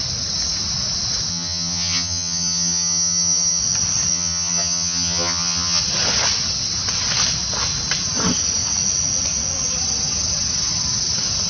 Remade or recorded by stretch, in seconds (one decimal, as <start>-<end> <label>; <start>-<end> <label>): 0.0-1.3 recorded; 1.3-3.6 remade; 3.6-4.1 recorded; 4.1-5.8 remade; 5.8-11.5 recorded